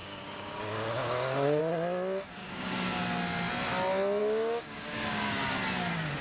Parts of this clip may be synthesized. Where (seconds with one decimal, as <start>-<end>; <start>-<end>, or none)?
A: 0.0-1.6; 2.4-3.0; 4.2-5.5